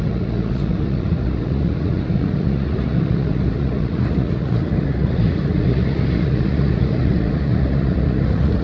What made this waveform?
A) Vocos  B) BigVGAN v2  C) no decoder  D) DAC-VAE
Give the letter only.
A